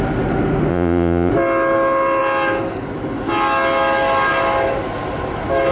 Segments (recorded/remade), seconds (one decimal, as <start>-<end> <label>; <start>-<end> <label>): 0.0-0.7 recorded; 0.7-1.3 remade; 1.3-5.7 recorded